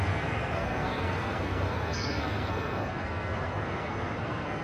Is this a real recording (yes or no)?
no